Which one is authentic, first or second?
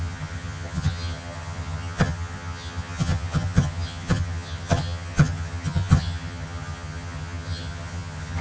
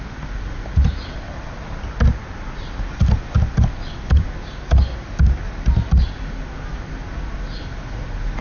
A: second